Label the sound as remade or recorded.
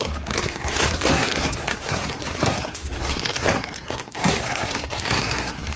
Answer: remade